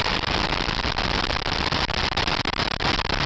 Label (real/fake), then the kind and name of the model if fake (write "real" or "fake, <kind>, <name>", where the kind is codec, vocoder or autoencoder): real